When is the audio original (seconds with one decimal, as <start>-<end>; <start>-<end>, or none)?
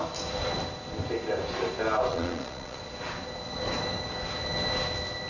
0.0-2.1; 2.8-5.3